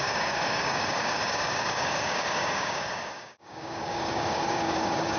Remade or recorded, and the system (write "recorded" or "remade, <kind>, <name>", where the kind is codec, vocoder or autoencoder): remade, codec, DAC